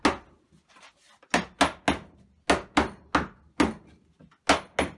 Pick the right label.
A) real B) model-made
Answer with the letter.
A